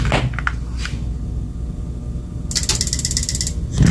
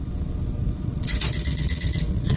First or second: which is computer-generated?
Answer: second